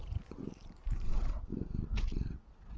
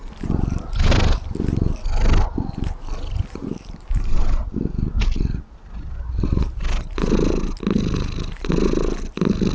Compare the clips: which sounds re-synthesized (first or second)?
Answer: first